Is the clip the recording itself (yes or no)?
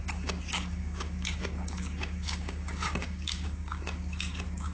no